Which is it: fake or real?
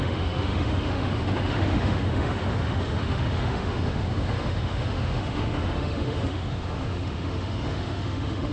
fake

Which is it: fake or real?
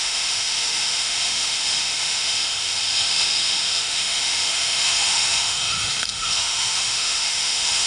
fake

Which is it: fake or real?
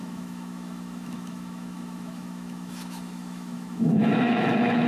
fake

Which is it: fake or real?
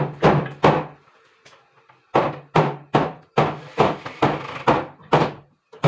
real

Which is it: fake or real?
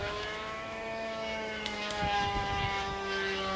fake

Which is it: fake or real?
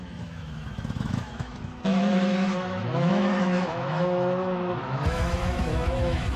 fake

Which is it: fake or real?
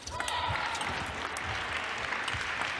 real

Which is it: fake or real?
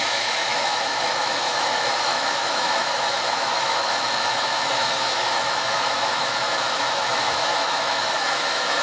fake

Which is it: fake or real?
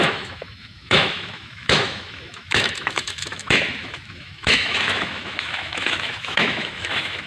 fake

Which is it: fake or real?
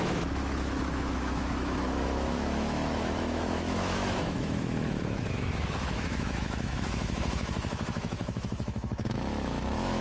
fake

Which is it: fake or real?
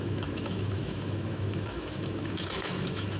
fake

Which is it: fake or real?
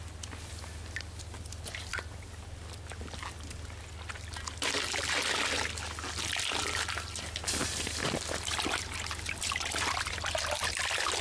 real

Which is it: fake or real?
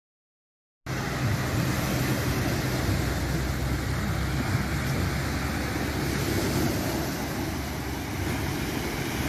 real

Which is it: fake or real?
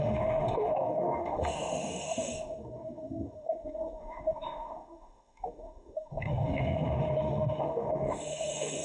fake